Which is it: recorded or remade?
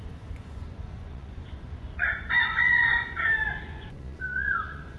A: remade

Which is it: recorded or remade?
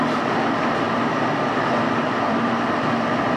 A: remade